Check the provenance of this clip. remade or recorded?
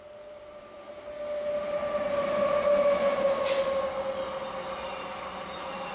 recorded